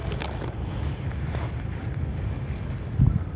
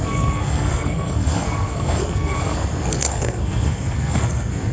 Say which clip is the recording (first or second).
first